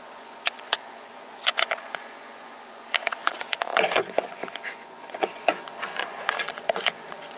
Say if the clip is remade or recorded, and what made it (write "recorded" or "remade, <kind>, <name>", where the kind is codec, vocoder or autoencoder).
remade, vocoder, Vocos